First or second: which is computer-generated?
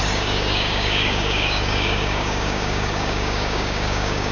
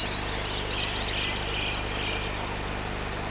first